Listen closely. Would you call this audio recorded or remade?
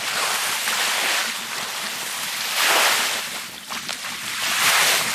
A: recorded